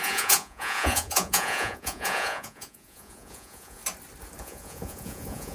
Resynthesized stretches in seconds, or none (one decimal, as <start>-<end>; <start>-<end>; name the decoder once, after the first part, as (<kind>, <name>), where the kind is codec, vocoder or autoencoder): 0.0-3.8 (vocoder, Vocos); 4.4-5.5